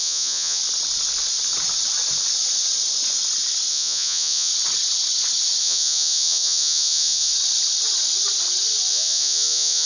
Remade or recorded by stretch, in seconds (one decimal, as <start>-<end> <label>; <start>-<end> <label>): 0.0-0.6 remade; 0.6-3.7 recorded; 3.7-4.5 remade; 4.5-5.6 recorded; 5.6-7.3 remade; 7.3-8.9 recorded; 8.9-9.9 remade